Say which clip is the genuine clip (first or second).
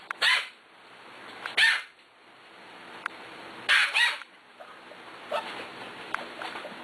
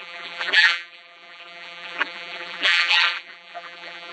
first